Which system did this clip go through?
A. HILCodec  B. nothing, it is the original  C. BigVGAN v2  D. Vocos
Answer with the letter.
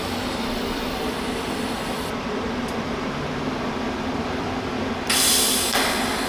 C